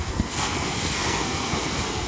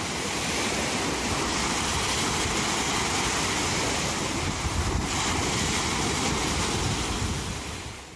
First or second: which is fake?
first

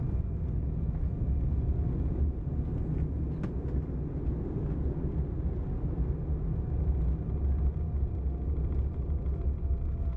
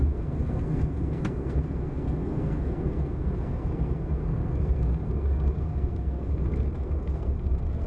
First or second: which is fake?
second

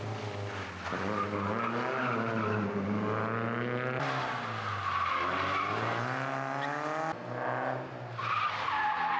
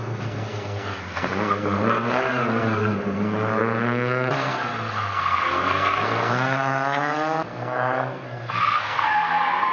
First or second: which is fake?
second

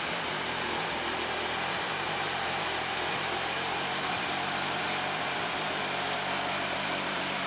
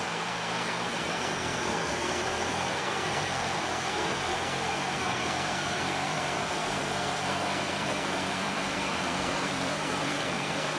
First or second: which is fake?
second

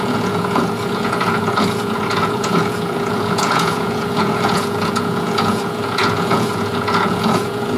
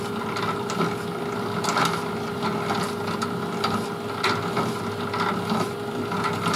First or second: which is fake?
first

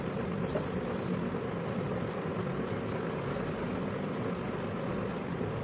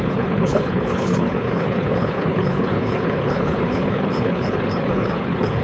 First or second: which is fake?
second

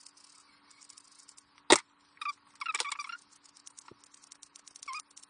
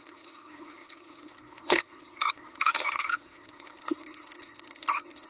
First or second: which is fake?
second